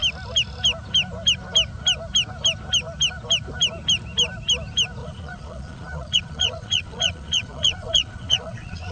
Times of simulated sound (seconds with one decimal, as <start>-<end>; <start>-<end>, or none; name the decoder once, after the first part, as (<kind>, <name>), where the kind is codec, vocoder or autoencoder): 5.0-8.9 (vocoder, Vocos)